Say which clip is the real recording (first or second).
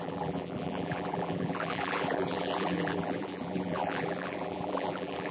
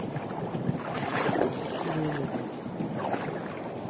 second